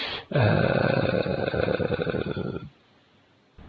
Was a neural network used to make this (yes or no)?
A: no